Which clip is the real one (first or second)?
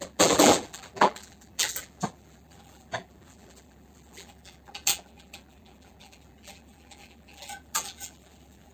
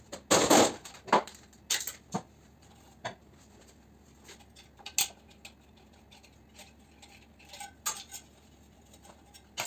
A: second